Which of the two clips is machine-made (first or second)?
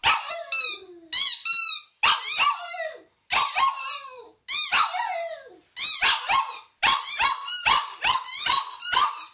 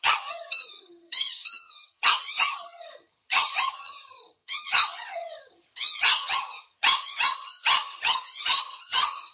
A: second